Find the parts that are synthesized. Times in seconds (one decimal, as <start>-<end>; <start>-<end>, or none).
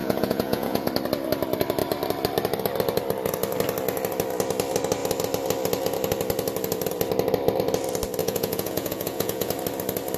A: 0.0-0.9; 8.2-9.5